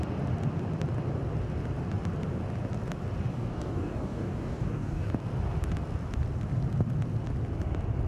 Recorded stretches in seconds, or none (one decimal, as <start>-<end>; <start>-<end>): 0.0-3.3; 5.1-8.1